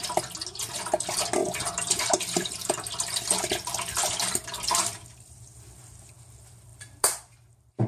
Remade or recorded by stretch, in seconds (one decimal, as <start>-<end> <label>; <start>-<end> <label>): 0.0-1.4 recorded; 1.4-6.1 remade; 6.1-6.7 recorded; 6.7-7.9 remade

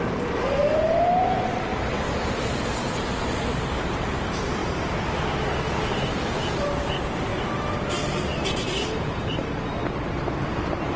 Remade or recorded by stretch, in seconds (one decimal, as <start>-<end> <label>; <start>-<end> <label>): 0.0-4.6 remade; 4.6-6.4 recorded; 6.4-7.3 remade; 7.3-8.2 recorded; 8.2-9.8 remade; 9.8-11.0 recorded